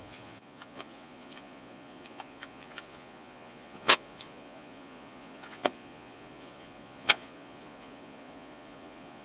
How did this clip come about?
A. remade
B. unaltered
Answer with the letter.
A